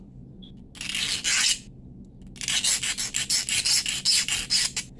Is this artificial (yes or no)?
no